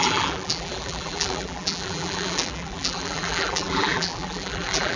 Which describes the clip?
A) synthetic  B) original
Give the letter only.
A